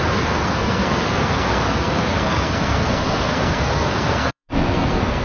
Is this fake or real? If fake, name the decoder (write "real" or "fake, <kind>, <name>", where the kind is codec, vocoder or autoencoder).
fake, codec, SNAC